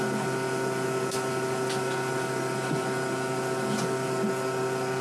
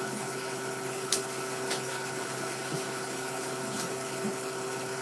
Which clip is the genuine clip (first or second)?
first